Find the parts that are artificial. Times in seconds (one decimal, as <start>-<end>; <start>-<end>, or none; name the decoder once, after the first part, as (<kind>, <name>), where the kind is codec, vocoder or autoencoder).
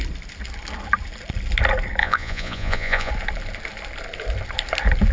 2.0-3.1 (vocoder, Vocos)